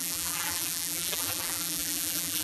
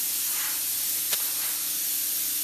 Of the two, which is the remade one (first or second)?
first